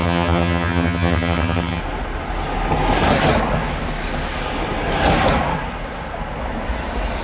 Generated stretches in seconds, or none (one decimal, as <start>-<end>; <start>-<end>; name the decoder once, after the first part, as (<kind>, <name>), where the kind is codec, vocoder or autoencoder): 0.0-1.8 (vocoder, HiFi-GAN)